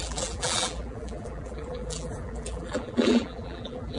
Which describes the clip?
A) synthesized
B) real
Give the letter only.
A